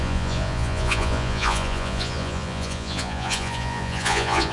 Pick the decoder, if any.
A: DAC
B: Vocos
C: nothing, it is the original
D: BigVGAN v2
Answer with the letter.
B